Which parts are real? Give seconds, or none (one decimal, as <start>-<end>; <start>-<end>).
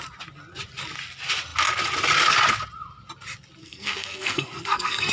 0.0-3.6